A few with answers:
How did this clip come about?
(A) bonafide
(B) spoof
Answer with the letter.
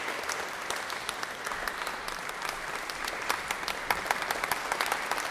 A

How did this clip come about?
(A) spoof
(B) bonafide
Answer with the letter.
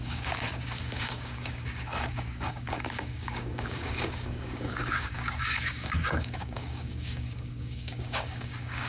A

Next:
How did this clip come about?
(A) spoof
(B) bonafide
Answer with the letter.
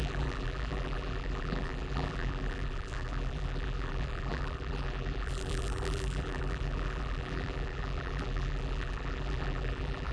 A